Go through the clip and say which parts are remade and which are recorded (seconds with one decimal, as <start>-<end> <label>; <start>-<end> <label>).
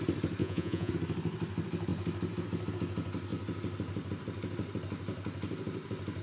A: 0.0-0.4 recorded; 0.4-0.9 remade; 0.9-6.2 recorded